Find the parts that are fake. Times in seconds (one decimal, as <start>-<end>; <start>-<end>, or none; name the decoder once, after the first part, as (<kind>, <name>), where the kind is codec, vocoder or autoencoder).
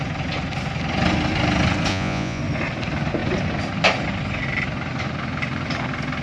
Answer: 1.9-2.4 (vocoder, Vocos)